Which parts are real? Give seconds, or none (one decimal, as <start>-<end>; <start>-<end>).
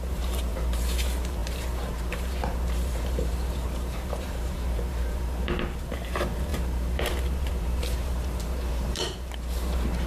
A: none